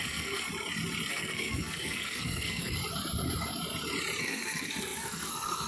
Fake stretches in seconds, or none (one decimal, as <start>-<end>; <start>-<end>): 0.0-0.5; 1.1-2.8; 4.2-5.7